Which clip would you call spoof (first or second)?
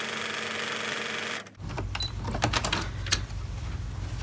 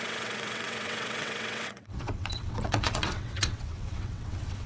second